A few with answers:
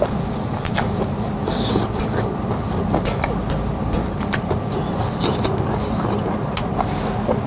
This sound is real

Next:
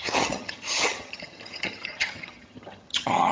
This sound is fake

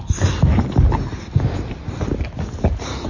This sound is real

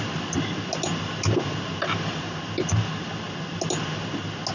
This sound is real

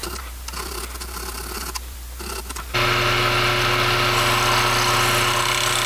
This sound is real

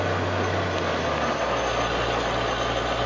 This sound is real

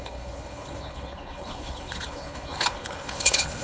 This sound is fake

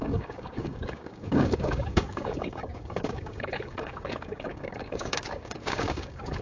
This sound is fake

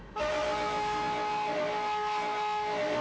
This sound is fake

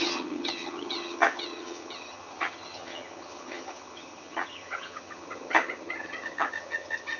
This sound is fake